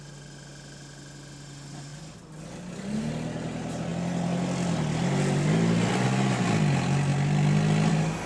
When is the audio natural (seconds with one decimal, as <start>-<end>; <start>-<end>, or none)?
0.0-8.3